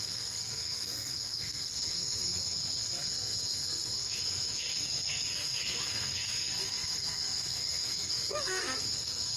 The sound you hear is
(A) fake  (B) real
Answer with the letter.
A